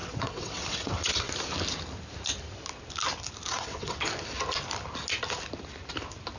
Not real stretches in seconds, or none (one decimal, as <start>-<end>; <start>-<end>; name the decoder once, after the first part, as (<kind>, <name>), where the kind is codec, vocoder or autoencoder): 0.0-1.3 (vocoder, WaveNeXt); 3.5-4.0